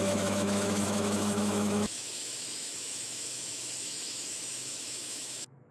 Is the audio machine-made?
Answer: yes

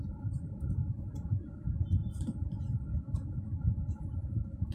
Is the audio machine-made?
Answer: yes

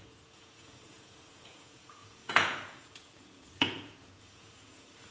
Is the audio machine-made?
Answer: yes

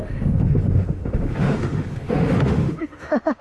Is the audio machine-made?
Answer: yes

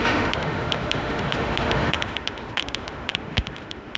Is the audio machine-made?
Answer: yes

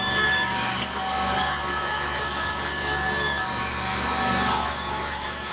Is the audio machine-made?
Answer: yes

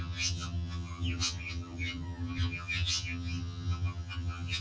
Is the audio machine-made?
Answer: yes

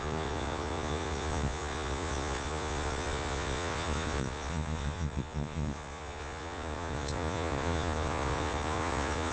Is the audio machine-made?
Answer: yes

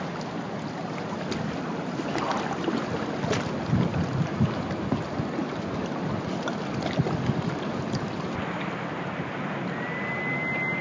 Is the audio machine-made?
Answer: no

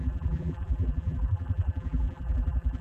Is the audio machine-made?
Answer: yes